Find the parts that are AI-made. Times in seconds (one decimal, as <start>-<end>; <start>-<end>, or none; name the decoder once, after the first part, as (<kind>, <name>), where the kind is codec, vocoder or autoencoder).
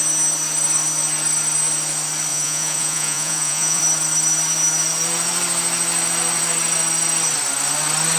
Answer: 2.3-3.8 (vocoder, Vocos)